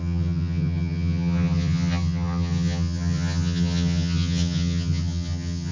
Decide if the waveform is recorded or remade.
remade